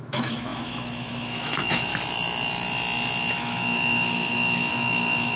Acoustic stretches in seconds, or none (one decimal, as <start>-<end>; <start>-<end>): 1.9-3.3